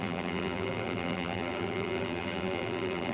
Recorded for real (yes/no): no